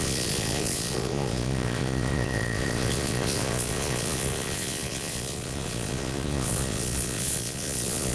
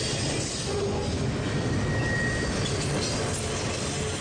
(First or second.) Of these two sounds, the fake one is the first